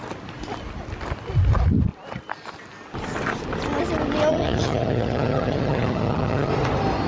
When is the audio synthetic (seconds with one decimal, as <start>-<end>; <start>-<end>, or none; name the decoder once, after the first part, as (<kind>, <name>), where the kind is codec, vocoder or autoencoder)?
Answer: 4.3-6.5 (vocoder, HiFi-GAN)

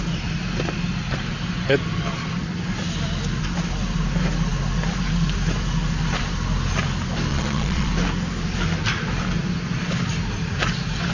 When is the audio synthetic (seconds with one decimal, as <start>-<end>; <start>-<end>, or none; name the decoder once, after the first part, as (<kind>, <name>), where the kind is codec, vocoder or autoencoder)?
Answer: 7.3-7.9 (vocoder, Vocos)

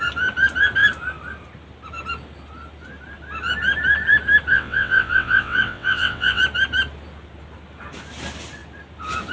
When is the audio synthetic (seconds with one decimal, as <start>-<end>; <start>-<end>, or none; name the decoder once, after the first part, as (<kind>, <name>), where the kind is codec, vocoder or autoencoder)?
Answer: 4.5-6.4 (vocoder, WaveNeXt)

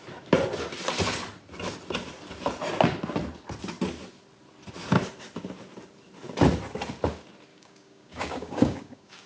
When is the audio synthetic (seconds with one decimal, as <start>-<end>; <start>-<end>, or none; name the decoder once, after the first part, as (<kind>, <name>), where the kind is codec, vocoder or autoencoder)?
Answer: 7.5-9.3 (codec, DAC)

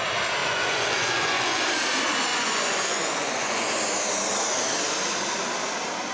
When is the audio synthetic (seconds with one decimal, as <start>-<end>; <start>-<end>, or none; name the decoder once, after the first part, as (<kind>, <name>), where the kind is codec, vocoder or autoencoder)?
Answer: 0.4-1.6 (vocoder, Vocos); 2.3-3.8

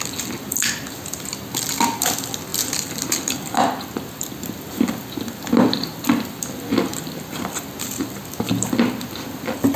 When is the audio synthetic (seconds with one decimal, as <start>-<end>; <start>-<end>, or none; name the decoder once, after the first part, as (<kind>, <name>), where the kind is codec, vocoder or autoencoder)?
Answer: none

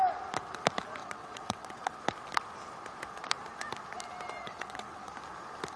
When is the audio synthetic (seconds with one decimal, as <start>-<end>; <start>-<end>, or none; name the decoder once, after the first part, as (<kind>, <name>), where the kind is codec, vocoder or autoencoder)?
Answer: 1.0-2.0 (vocoder, WaveNeXt); 4.4-5.1

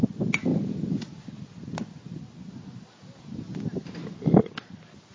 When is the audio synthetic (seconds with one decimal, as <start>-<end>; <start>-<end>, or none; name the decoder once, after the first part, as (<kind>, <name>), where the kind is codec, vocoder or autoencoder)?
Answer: none